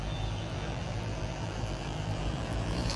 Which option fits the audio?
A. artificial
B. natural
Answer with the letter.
A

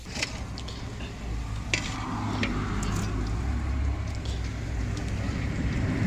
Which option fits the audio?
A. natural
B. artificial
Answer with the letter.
A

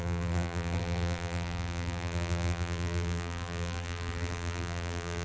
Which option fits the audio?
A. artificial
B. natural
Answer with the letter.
A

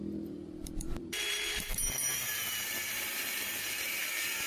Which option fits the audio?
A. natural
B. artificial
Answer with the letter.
B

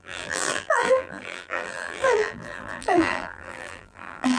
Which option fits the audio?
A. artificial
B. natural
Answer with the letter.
A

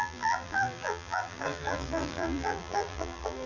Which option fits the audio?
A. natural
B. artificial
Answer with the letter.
B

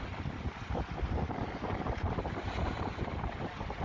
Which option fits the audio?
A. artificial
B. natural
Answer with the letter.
B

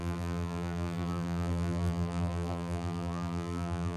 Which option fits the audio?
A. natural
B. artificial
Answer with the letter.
B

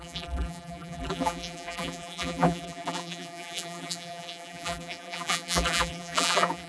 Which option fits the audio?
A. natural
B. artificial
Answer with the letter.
B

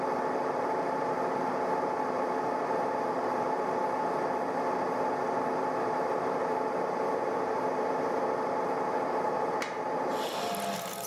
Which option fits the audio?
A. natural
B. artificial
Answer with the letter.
B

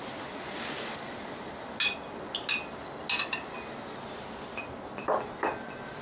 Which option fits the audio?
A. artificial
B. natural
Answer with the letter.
B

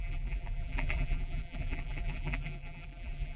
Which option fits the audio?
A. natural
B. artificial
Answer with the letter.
B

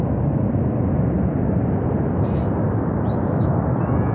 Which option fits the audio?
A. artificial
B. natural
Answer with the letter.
B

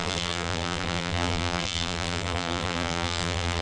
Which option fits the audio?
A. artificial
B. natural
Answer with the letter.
A